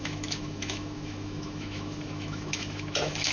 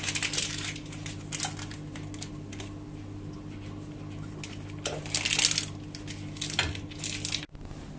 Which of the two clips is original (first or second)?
second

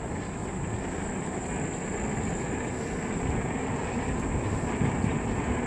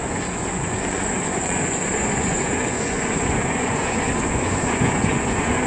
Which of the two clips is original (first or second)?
first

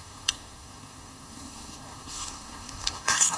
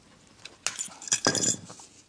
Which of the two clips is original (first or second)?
second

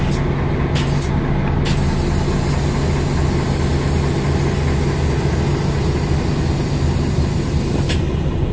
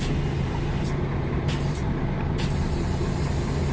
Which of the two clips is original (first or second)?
first